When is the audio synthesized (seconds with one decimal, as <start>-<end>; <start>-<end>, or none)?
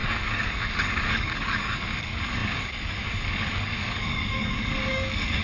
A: 0.0-5.4